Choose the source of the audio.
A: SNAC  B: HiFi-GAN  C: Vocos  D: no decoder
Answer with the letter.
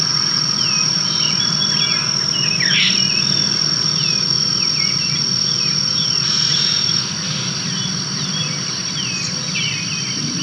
D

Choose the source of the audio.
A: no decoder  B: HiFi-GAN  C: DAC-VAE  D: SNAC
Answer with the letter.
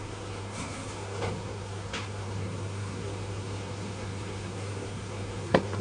D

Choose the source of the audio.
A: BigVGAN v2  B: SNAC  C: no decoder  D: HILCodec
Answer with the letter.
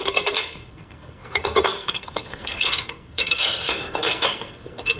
B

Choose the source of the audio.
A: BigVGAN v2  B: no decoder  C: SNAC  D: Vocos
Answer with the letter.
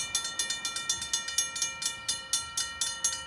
B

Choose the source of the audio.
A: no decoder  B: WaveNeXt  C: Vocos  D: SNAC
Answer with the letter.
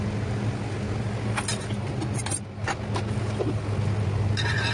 A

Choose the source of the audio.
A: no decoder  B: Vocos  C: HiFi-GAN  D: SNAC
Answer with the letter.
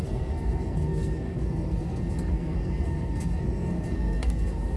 D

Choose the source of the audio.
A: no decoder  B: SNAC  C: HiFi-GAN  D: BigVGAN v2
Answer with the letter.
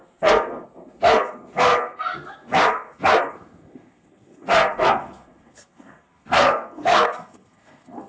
B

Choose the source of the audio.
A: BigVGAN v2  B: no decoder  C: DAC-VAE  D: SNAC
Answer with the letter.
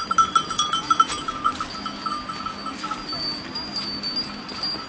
B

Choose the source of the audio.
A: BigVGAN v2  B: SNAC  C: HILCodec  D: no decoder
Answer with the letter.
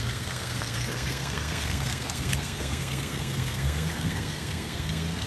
B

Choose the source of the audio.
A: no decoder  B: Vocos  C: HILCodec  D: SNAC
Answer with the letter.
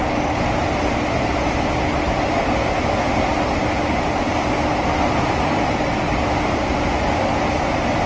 A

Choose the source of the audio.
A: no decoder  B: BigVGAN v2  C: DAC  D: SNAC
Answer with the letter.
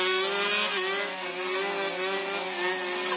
A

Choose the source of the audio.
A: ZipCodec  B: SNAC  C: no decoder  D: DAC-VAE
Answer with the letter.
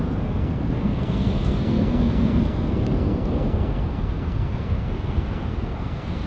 B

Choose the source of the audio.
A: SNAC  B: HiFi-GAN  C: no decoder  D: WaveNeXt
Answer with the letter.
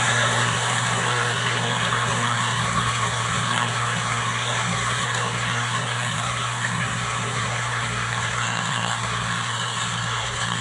A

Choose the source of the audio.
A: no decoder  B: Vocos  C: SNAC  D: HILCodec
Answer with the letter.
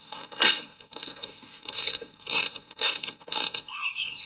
C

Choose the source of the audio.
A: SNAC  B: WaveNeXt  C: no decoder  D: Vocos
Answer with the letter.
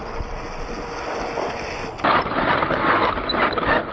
C